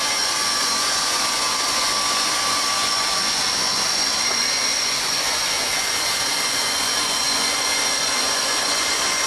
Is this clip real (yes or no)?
no